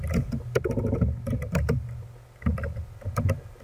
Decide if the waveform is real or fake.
real